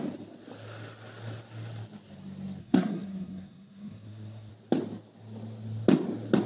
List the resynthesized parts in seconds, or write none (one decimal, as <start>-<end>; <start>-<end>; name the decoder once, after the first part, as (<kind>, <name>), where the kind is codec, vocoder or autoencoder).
2.6-4.5 (codec, SNAC)